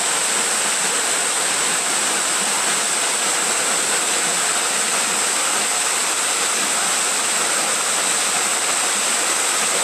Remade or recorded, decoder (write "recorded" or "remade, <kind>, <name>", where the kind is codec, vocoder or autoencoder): recorded